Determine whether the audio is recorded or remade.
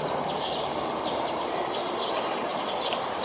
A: remade